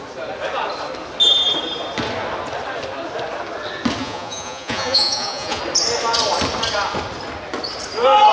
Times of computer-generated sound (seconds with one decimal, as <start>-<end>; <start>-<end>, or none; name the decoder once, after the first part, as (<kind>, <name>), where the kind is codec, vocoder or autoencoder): 4.0-5.6 (vocoder, Vocos)